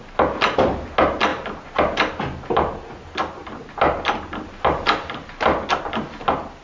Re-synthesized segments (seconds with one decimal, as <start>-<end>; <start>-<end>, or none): 1.3-1.8